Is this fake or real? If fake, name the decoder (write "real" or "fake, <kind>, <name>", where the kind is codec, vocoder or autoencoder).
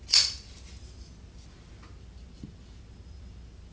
real